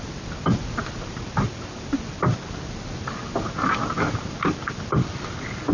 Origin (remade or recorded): recorded